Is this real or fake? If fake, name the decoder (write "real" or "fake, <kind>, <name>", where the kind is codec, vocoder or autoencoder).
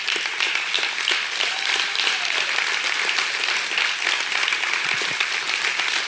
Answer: real